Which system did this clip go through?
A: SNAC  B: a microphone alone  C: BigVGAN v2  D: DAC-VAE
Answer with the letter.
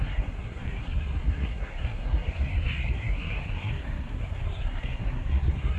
A